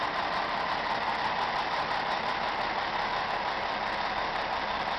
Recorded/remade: recorded